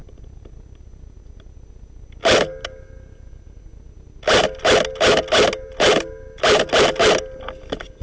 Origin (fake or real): real